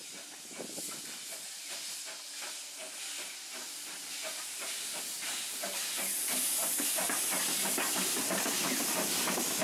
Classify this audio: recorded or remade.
recorded